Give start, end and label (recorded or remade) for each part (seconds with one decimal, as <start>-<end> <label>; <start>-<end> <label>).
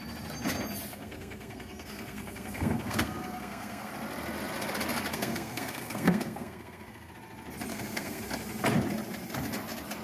0.0-0.9 recorded; 0.9-3.9 remade; 3.9-5.1 recorded; 5.1-7.1 remade; 7.1-7.7 recorded; 7.7-8.2 remade; 8.2-10.0 recorded